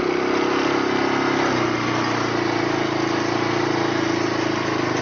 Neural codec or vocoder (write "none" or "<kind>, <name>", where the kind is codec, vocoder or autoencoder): none